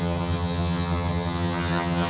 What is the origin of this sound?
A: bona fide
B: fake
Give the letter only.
B